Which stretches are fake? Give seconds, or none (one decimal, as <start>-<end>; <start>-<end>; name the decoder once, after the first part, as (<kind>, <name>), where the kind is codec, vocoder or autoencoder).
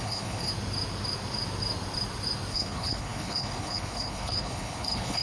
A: 0.0-0.5 (codec, HILCodec); 2.5-5.2